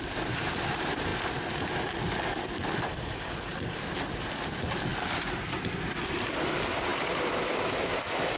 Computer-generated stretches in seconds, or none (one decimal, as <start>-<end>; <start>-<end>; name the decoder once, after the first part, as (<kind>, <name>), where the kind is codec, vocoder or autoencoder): 0.0-1.1 (vocoder, BigVGAN v2); 2.0-4.9; 5.4-6.9; 7.8-8.4